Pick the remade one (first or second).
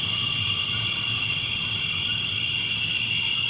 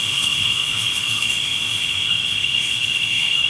second